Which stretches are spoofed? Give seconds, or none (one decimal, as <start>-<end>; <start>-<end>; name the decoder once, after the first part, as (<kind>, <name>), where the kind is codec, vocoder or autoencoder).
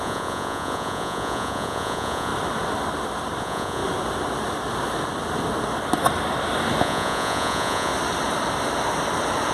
0.0-2.3 (vocoder, Vocos); 3.4-3.8; 6.8-7.9